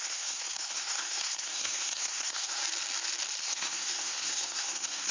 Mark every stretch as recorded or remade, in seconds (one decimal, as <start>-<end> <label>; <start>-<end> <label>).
0.0-2.6 remade; 2.6-3.4 recorded; 3.4-5.1 remade